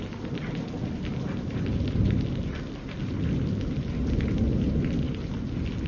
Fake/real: real